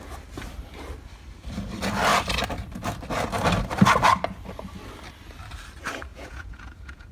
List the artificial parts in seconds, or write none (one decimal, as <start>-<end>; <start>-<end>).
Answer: 6.1-7.1